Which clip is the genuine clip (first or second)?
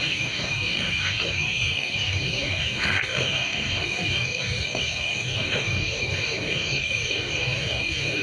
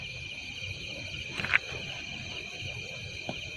second